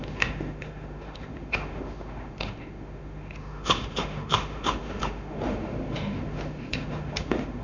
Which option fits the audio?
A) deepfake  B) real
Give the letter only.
A